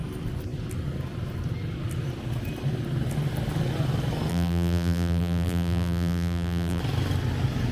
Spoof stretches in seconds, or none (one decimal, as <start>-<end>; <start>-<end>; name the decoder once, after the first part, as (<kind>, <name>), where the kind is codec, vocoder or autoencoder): 4.3-6.8 (vocoder, BigVGAN v2)